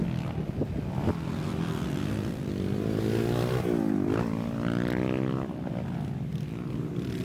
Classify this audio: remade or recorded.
recorded